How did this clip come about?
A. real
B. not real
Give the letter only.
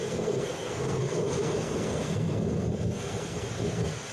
B